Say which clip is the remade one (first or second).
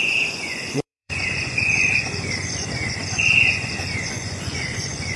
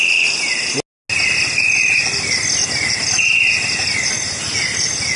first